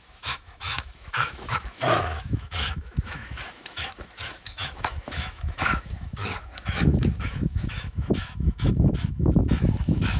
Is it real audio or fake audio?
fake